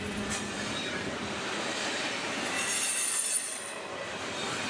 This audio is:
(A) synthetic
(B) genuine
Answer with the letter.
A